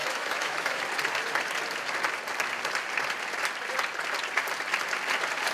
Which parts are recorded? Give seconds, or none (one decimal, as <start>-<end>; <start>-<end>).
0.8-5.5